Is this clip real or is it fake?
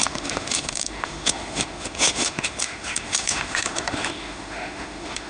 fake